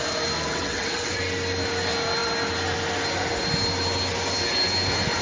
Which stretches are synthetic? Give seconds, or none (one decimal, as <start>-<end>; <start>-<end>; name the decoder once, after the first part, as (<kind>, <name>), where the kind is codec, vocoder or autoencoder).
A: 0.5-1.2 (vocoder, WaveNeXt)